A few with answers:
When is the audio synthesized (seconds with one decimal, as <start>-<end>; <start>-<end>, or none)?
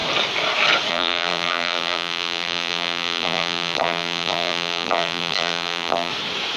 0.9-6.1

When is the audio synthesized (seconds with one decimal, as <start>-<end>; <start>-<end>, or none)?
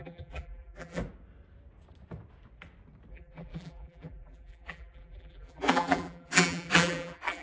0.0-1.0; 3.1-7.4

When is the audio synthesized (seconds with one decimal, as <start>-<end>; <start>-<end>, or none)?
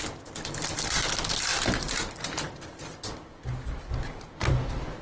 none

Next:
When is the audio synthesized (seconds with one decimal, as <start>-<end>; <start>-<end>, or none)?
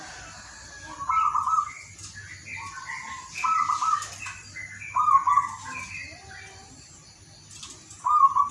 6.0-7.2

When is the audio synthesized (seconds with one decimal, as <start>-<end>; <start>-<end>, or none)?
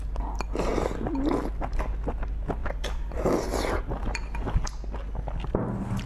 2.6-3.2